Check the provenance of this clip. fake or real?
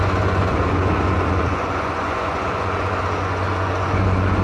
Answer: fake